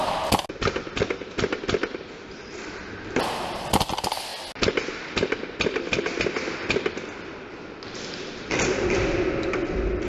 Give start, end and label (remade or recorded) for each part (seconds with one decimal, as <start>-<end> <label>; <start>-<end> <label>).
0.0-10.1 recorded